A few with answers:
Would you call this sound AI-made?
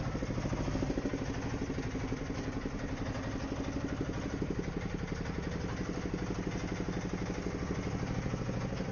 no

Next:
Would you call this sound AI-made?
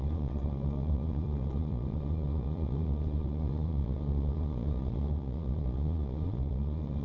yes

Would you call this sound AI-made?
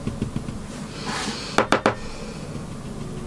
no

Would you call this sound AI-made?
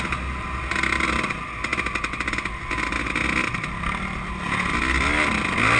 no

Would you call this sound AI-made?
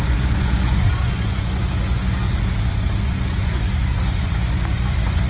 yes